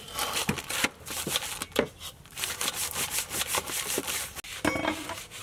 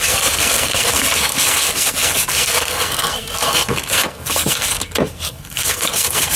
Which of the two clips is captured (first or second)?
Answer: first